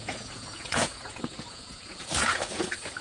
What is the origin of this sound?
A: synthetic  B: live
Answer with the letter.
A